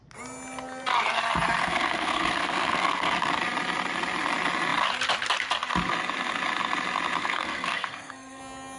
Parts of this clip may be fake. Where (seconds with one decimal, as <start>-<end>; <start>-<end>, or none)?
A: 1.6-3.3; 7.2-8.4